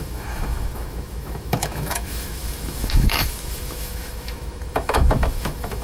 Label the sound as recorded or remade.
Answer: remade